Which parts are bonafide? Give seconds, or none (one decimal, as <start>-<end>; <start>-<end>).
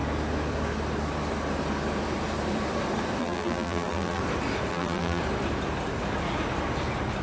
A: 0.0-3.2; 4.2-4.7; 5.2-7.2